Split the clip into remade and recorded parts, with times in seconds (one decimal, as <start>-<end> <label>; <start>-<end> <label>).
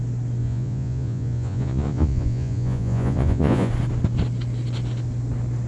0.0-0.4 recorded; 0.4-3.7 remade; 3.7-5.7 recorded